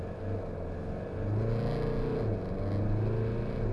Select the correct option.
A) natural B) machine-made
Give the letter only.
A